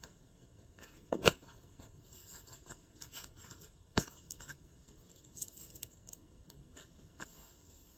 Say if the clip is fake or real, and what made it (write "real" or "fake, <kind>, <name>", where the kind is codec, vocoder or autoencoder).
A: fake, codec, SNAC